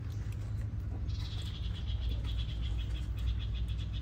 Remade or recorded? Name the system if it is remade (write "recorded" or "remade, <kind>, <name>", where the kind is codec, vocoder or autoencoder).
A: recorded